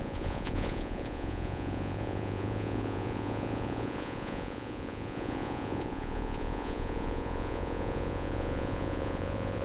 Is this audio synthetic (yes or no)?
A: yes